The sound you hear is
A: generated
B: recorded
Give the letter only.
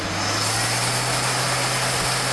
B